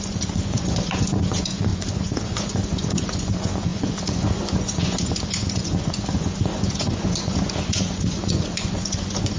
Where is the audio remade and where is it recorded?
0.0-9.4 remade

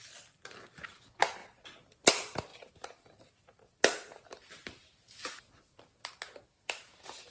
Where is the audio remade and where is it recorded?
0.0-7.3 recorded

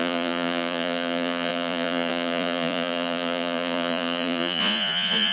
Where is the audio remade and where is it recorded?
0.0-5.3 remade